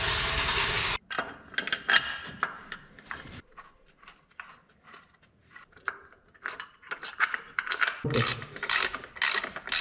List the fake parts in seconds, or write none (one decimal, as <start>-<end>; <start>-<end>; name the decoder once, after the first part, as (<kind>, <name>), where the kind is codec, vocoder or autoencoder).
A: 8.3-9.1 (vocoder, BigVGAN v2)